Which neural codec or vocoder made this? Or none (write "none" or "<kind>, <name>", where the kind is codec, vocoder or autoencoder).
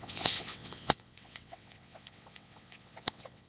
vocoder, WaveNeXt